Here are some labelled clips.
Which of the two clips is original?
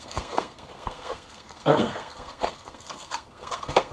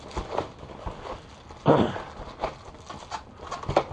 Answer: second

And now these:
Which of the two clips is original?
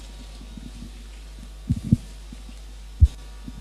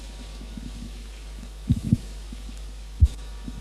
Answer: first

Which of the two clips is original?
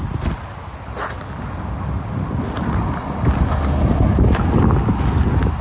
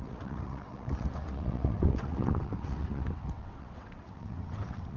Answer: first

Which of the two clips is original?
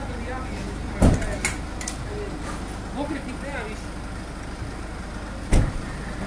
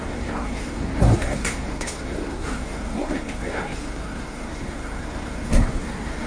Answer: first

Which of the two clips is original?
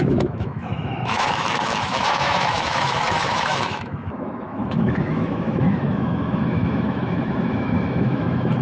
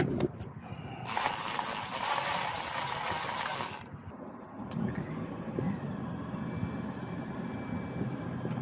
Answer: second